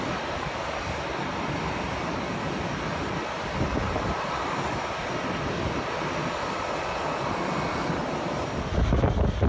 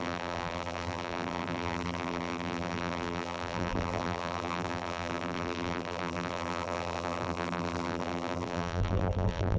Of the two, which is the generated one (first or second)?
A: second